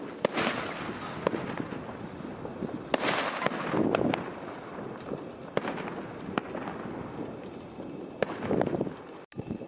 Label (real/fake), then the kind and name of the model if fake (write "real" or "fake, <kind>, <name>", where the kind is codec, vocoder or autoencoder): real